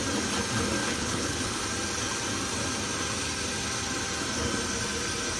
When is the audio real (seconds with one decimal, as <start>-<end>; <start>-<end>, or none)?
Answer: 0.0-0.8; 1.6-5.4